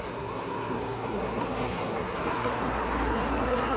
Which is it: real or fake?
fake